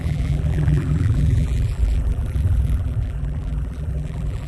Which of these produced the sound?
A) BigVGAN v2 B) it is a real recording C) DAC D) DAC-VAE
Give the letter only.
A